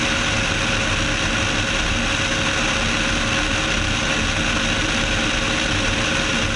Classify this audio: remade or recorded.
recorded